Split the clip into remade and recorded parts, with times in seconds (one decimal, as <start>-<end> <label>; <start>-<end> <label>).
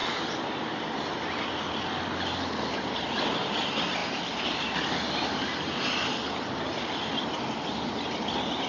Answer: 0.0-8.7 recorded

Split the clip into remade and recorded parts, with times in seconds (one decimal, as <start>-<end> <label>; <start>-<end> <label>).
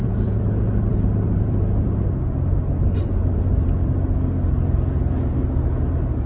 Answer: 0.0-3.8 remade; 3.8-6.3 recorded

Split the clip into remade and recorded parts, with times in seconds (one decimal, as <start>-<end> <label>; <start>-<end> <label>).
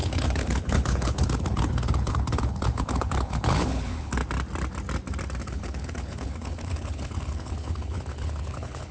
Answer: 0.0-4.2 remade; 4.2-5.4 recorded; 5.4-8.9 remade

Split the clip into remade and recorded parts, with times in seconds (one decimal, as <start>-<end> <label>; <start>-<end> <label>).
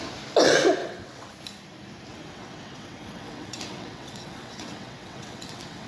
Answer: 0.0-0.8 recorded; 0.8-1.3 remade; 1.3-2.1 recorded; 2.1-5.9 remade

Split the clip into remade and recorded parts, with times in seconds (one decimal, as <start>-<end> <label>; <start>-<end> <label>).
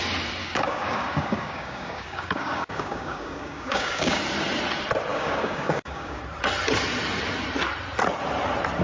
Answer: 0.0-0.4 recorded; 0.4-4.2 remade; 4.2-5.1 recorded; 5.1-6.2 remade; 6.2-8.8 recorded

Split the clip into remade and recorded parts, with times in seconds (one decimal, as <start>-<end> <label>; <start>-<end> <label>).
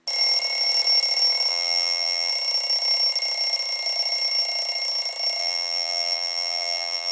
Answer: 0.0-1.5 recorded; 1.5-2.3 remade; 2.3-5.4 recorded; 5.4-7.1 remade